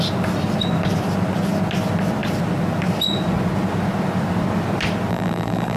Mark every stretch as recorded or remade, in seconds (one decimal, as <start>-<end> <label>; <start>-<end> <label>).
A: 0.0-5.1 recorded; 5.1-5.8 remade